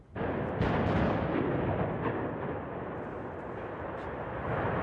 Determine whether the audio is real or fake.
real